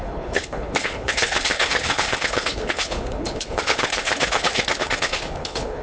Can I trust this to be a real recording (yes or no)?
no